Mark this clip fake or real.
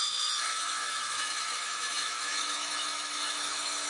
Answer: fake